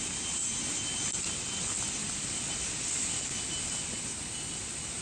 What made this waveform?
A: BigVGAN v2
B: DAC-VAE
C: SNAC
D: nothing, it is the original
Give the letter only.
D